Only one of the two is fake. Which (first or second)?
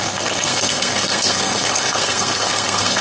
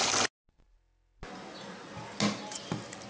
first